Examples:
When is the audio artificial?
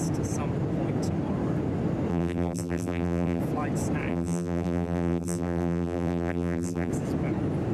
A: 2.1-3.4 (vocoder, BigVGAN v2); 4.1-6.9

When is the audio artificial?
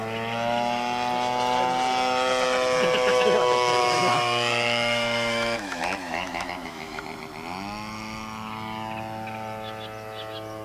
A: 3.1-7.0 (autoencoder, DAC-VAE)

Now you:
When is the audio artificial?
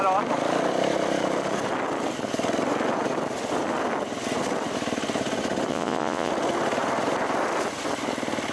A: 5.7-6.3 (vocoder, Vocos)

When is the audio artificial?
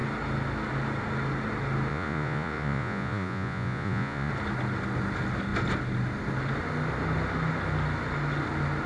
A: 1.9-4.3 (vocoder, Vocos)